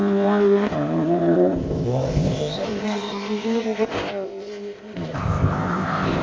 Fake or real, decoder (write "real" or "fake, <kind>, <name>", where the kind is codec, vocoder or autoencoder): fake, codec, ZipCodec